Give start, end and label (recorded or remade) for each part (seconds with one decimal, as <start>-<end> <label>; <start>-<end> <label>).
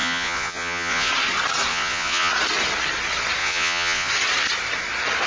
0.0-1.1 remade; 1.1-1.7 recorded; 1.7-2.3 remade; 2.3-3.4 recorded; 3.4-4.1 remade; 4.1-5.3 recorded